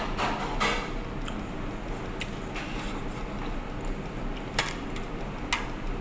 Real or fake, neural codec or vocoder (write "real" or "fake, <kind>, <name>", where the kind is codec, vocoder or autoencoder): real